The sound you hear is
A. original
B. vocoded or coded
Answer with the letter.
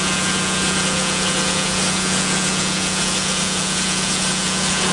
B